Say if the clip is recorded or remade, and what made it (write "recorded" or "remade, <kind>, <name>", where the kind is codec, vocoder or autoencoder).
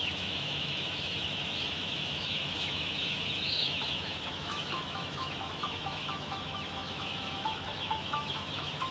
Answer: remade, autoencoder, DAC-VAE